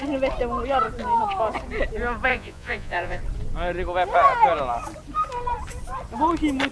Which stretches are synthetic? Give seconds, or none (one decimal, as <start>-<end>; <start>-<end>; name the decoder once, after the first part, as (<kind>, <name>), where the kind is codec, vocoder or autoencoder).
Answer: 2.3-3.2 (vocoder, Vocos)